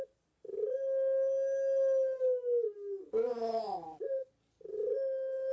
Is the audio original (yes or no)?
yes